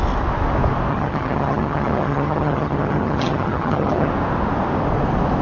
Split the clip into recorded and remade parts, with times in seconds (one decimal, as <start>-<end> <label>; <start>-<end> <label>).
0.0-0.9 recorded; 0.9-4.1 remade; 4.1-5.4 recorded